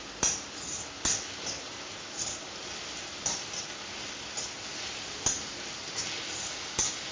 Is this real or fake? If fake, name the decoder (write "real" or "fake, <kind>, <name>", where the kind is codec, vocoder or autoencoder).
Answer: real